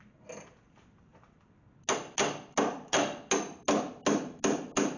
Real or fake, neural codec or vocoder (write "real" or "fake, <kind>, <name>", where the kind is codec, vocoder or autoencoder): real